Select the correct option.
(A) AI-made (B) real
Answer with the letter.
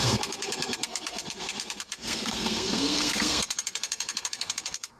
A